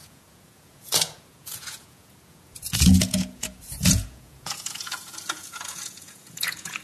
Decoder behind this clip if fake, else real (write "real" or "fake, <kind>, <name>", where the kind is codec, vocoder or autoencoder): fake, vocoder, Vocos